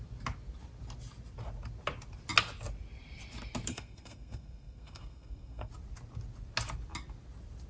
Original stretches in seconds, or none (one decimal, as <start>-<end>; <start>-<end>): 0.0-3.7; 5.7-7.7